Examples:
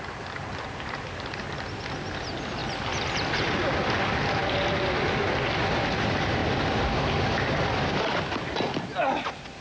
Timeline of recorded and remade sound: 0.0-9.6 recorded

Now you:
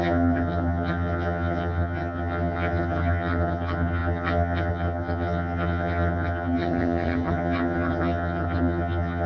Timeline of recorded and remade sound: 0.0-9.3 remade

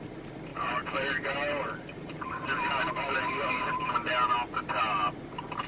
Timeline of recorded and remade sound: 0.0-0.5 recorded; 0.5-3.9 remade; 3.9-5.7 recorded

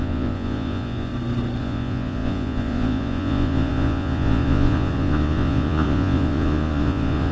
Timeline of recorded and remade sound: 0.0-1.1 remade; 1.1-1.6 recorded; 1.6-7.3 remade

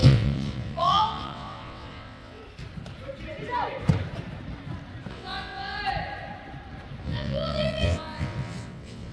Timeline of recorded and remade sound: 0.0-2.4 remade; 2.4-5.1 recorded; 5.1-5.8 remade; 5.8-7.0 recorded; 7.0-9.1 remade

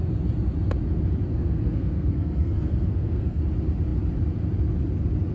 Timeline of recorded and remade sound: 0.0-1.3 recorded; 1.3-3.4 remade; 3.4-5.3 recorded